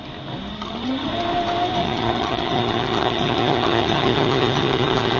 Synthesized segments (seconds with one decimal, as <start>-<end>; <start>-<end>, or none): 0.5-1.1; 1.8-5.2